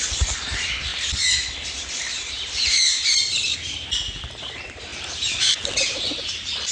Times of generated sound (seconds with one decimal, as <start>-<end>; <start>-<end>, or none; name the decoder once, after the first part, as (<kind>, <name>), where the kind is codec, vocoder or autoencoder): 0.0-6.7 (vocoder, BigVGAN v2)